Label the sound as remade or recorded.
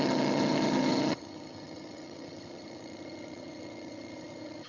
remade